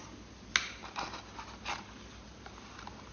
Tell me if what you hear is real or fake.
real